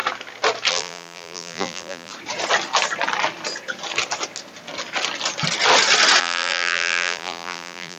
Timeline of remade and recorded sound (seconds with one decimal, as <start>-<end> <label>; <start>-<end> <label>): 0.0-0.7 recorded; 0.7-2.1 remade; 2.1-6.2 recorded; 6.2-8.0 remade